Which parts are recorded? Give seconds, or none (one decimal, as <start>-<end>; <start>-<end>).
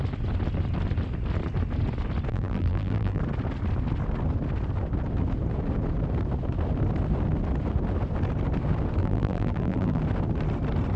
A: 0.0-2.3; 3.2-9.0; 10.0-11.0